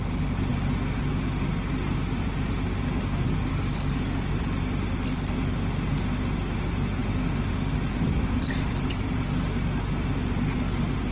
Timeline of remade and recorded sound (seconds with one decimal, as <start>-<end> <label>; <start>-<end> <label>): 0.0-3.5 recorded; 3.5-4.3 remade; 4.3-11.1 recorded